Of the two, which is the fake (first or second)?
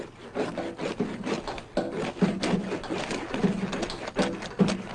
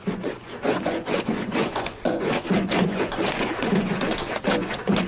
second